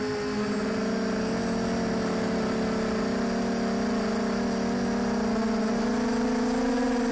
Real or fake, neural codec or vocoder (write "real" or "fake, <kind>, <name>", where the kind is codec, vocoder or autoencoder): real